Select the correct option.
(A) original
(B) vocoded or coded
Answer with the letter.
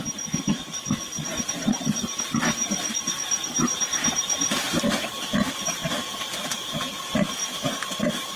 A